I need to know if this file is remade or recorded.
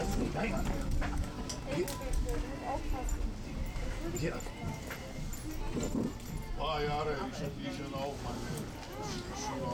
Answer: recorded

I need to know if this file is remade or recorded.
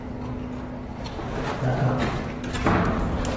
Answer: recorded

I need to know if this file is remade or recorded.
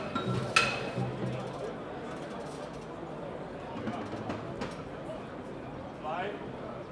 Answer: recorded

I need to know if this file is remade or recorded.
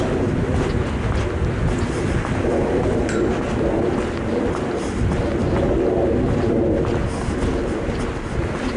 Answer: recorded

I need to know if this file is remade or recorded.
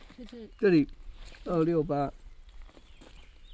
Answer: recorded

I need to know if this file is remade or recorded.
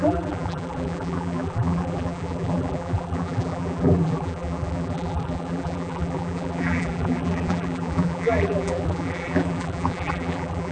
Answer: remade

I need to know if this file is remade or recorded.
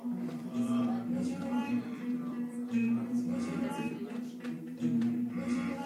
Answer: remade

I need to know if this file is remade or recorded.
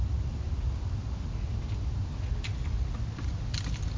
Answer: recorded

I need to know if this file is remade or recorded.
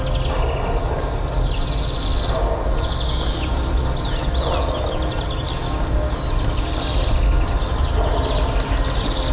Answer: recorded